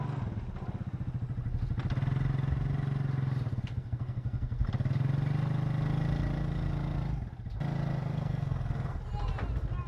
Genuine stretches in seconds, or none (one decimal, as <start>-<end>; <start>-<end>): 0.0-3.5; 4.7-8.0; 9.0-9.9